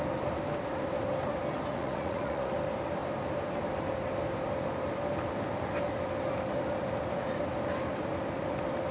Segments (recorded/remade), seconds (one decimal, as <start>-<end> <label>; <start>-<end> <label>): 0.0-1.7 recorded; 1.7-2.5 remade; 2.5-8.9 recorded